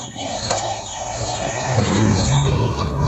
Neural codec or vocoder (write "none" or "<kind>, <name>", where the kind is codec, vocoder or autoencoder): codec, SNAC